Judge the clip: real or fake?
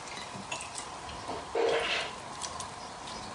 real